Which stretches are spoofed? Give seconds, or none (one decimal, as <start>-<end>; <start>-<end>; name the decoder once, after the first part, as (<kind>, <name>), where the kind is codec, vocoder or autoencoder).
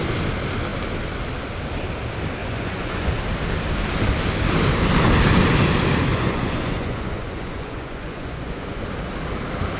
2.4-3.1 (vocoder, Vocos); 6.1-8.8